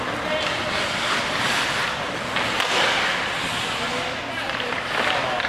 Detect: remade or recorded recorded